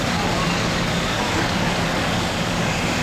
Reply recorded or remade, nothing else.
remade